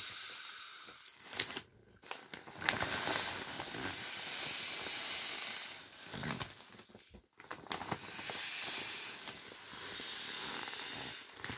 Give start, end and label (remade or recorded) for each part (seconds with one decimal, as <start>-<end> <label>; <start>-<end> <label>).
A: 0.0-6.2 recorded; 6.2-6.9 remade; 6.9-11.6 recorded